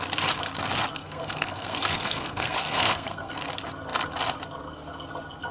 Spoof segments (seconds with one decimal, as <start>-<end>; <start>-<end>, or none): 1.0-3.3

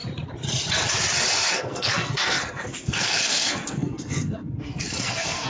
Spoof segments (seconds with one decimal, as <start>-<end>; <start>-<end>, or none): 1.5-5.5

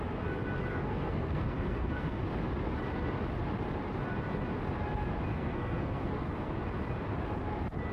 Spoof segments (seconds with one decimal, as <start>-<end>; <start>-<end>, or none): 0.7-2.2; 5.3-6.6